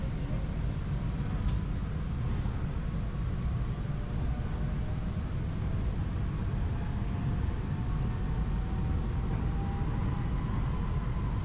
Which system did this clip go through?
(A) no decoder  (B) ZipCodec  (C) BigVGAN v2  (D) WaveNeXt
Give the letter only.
A